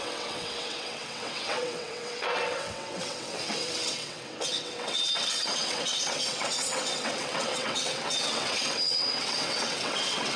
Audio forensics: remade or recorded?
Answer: remade